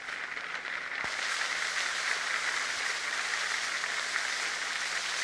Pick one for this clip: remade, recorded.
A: recorded